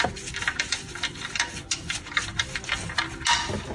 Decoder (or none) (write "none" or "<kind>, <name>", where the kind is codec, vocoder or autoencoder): none